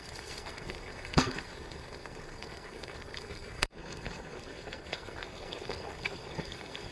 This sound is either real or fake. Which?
fake